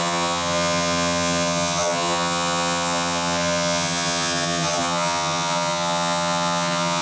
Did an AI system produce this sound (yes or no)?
yes